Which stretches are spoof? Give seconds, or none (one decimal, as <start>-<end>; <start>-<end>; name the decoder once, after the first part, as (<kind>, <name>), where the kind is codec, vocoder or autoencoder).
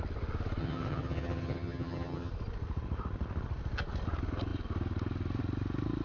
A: 0.6-2.3 (vocoder, HiFi-GAN)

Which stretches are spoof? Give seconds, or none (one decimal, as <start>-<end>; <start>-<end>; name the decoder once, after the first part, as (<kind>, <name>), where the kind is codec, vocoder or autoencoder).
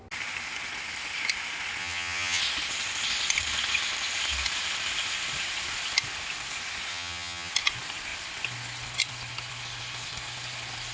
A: 1.8-2.4 (vocoder, HiFi-GAN); 6.9-7.5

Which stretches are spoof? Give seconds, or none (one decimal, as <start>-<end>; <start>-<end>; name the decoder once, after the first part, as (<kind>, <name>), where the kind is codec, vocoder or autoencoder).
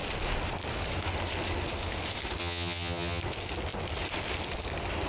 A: 2.4-3.2 (vocoder, HiFi-GAN)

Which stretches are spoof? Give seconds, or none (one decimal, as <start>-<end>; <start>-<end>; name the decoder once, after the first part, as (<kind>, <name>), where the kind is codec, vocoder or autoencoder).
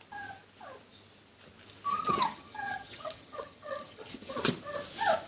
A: 1.9-4.4 (vocoder, HiFi-GAN)